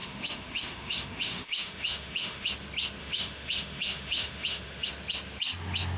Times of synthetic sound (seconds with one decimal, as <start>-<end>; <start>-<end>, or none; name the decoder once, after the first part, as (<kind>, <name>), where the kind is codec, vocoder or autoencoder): 0.0-2.5 (autoencoder, DAC-VAE); 3.0-4.9